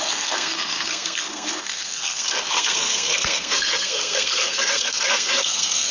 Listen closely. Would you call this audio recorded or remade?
remade